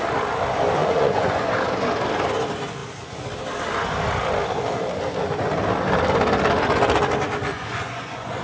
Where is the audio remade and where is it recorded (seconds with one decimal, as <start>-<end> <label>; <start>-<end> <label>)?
0.0-0.8 recorded; 0.8-1.5 remade; 1.5-7.5 recorded; 7.5-8.4 remade